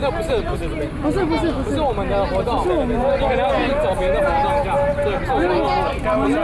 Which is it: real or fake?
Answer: real